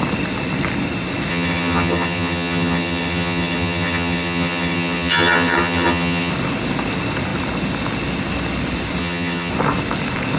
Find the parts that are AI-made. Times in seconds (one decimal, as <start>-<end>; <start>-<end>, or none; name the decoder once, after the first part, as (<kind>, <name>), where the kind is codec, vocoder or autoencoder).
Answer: 1.3-6.3 (vocoder, HiFi-GAN); 9.0-9.5